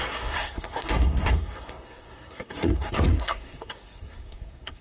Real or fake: fake